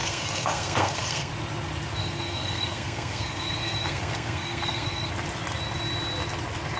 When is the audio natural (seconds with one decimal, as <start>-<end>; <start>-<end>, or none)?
1.3-2.0; 5.1-6.8